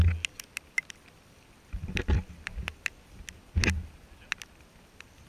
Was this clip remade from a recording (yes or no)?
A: no